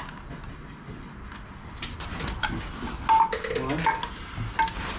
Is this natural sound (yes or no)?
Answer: yes